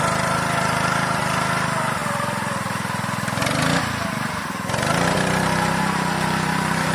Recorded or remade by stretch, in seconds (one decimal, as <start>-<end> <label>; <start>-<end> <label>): 0.0-6.9 remade